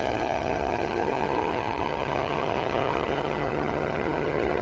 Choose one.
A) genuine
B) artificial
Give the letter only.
B